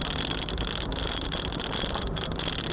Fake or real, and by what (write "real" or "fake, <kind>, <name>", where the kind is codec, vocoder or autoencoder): real